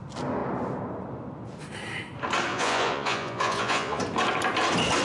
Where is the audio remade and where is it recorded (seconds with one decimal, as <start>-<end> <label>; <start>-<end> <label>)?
0.0-2.5 recorded; 2.5-4.0 remade; 4.0-5.0 recorded